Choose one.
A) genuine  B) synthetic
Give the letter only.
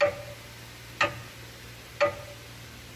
A